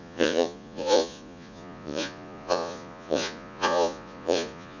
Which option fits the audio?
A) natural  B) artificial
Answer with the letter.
B